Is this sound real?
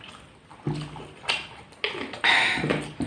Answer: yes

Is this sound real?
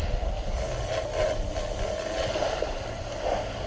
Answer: yes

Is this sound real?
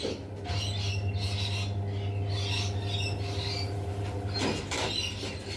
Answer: yes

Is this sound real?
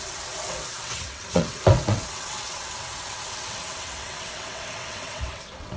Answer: no